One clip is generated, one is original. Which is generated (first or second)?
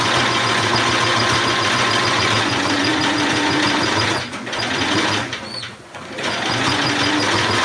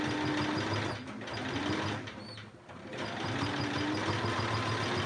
first